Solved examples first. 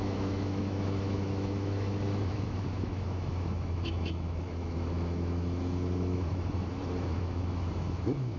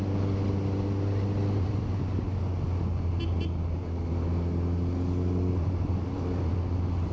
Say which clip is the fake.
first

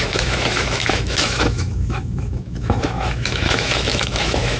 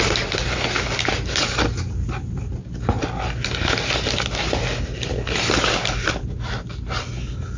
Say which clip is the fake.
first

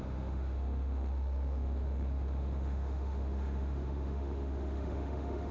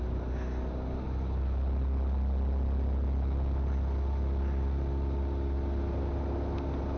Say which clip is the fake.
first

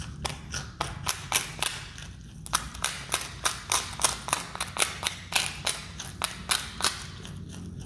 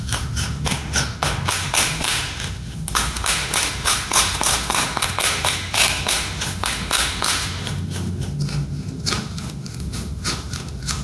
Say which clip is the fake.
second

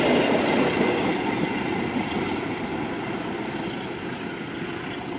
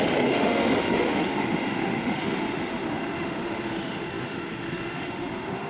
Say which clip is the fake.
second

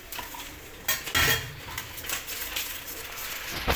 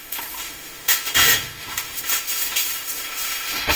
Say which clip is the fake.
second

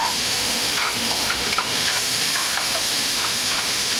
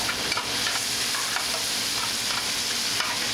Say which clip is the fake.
first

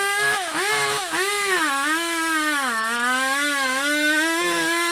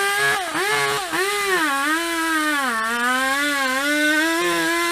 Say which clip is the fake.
first